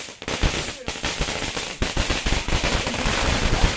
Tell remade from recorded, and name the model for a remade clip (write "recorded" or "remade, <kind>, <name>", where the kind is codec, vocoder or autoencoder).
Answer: recorded